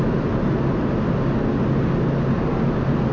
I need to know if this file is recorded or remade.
recorded